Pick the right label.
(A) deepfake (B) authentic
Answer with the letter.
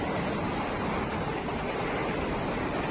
B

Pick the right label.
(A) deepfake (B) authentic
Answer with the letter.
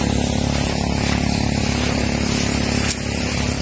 B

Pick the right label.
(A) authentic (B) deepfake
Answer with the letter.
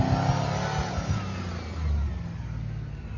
A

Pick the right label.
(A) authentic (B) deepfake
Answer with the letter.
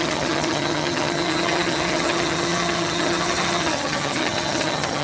B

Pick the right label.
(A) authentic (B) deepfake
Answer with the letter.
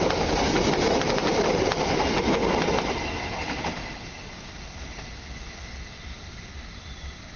A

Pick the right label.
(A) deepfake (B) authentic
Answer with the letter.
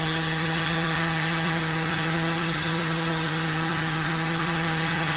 A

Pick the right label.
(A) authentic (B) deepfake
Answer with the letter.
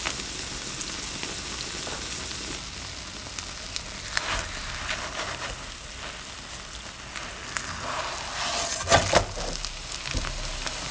A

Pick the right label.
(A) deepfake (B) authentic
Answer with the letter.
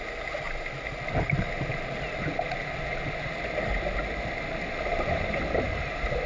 B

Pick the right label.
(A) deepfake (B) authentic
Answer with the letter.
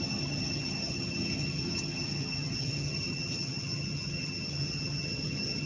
A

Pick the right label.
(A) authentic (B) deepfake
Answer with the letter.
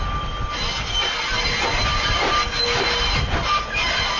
A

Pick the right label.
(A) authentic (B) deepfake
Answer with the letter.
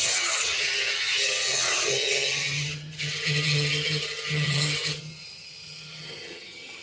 B